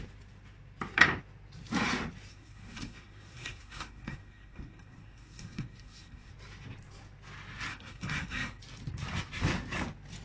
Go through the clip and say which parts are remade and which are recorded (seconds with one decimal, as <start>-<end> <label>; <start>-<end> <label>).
0.0-2.3 recorded; 2.3-6.3 remade; 6.3-7.7 recorded; 7.7-8.6 remade; 8.6-10.2 recorded